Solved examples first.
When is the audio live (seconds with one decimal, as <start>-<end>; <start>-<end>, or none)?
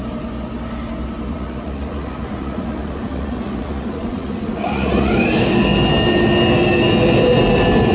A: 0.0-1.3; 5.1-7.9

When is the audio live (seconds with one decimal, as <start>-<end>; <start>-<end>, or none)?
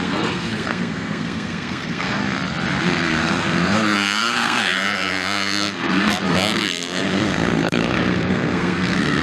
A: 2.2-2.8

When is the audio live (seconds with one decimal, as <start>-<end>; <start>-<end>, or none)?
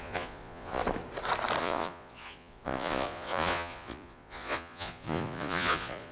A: 0.8-1.6